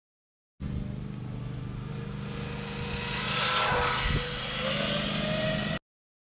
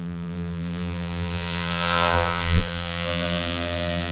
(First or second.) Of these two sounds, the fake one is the second